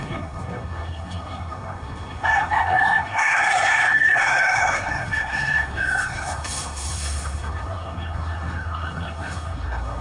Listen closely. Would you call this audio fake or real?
fake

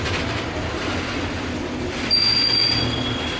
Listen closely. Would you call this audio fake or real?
real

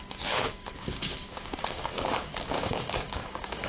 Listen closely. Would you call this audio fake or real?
fake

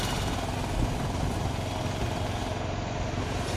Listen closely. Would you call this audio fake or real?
real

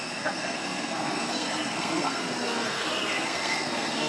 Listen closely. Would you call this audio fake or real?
fake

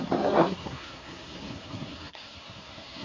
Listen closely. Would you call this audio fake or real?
fake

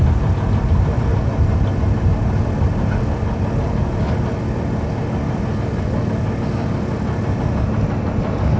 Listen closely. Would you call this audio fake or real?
real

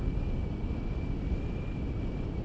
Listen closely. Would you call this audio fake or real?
real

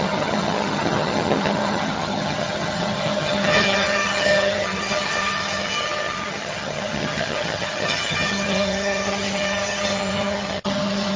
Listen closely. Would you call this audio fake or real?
fake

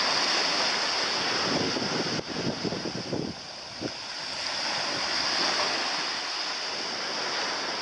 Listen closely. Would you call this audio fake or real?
real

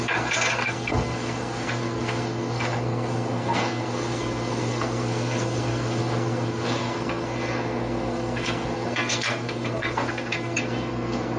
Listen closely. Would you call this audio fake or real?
fake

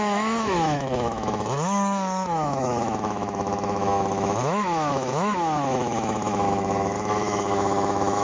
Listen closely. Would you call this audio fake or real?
fake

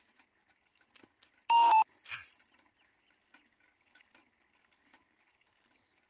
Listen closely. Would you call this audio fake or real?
real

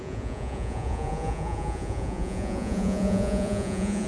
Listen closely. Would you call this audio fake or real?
fake